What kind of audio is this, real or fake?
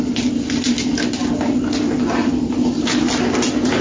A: real